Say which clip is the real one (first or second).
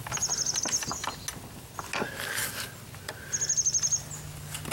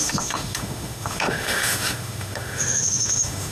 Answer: first